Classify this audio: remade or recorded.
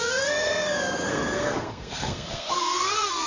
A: remade